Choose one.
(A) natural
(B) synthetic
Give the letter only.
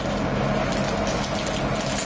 A